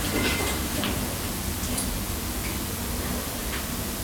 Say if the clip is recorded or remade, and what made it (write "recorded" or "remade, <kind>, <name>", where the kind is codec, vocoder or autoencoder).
recorded